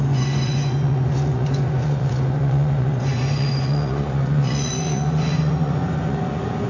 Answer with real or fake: fake